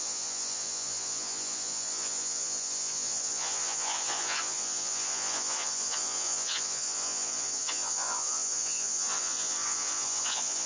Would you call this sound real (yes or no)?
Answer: no